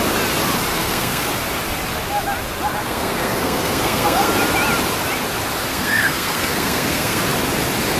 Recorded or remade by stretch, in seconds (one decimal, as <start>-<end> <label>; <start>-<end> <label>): 0.0-0.7 recorded; 0.7-1.3 remade; 1.3-2.8 recorded; 2.8-4.3 remade; 4.3-5.7 recorded; 5.7-7.2 remade; 7.2-8.0 recorded